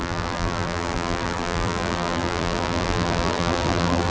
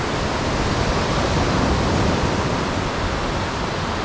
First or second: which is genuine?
second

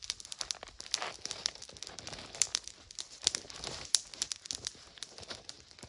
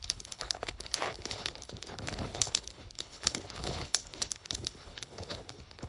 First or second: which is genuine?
first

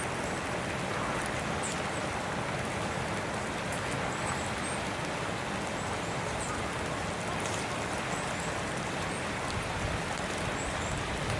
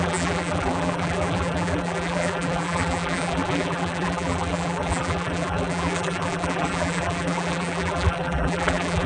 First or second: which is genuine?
first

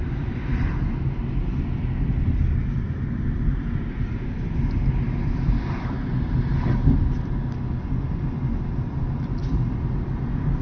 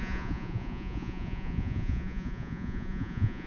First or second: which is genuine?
first